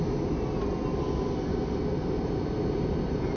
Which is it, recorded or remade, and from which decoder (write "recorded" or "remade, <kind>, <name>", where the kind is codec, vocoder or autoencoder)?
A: recorded